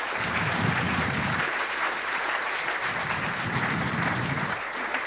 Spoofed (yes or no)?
yes